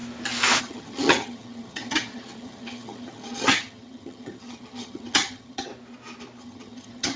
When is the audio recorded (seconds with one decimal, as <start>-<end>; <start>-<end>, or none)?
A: 0.0-0.6; 5.7-6.4